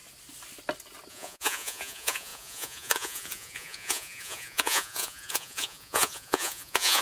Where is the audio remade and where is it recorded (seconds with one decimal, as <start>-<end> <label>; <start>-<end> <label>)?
0.0-1.1 recorded; 1.1-7.0 remade